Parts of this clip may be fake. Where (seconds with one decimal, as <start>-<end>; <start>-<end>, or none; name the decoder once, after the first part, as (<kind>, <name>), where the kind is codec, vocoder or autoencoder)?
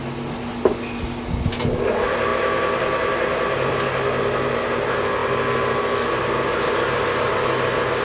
none